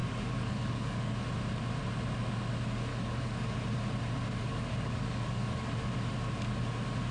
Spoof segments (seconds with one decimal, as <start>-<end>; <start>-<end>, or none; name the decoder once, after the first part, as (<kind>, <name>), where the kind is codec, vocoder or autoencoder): 0.0-1.1 (codec, DAC); 2.9-3.5; 4.4-5.9